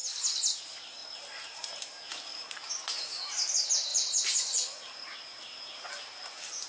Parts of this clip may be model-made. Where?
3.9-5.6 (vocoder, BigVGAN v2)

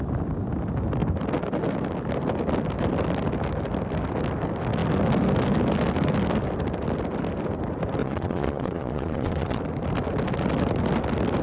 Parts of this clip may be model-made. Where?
8.0-9.6 (vocoder, Vocos)

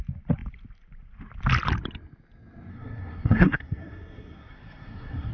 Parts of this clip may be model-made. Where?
2.7-5.3 (codec, SNAC)

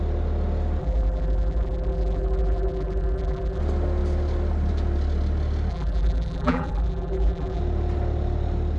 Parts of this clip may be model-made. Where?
0.8-3.6 (vocoder, BigVGAN v2); 5.7-7.6

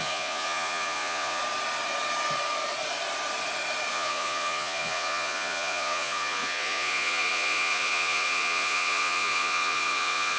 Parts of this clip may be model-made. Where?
0.0-1.4 (vocoder, Vocos); 3.9-10.4

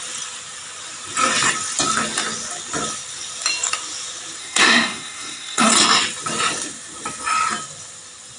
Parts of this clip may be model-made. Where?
4.4-5.7 (codec, SNAC)